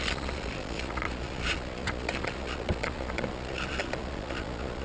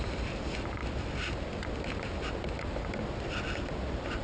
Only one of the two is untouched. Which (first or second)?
second